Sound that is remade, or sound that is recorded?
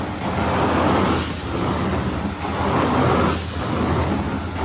recorded